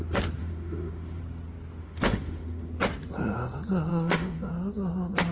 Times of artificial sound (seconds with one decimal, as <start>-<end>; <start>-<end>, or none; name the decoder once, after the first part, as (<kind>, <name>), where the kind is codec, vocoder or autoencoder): 0.4-1.2 (autoencoder, DAC-VAE); 1.8-2.7; 3.9-4.5